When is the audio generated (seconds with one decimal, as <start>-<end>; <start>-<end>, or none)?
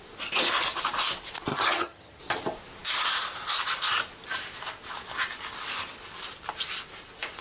1.5-2.2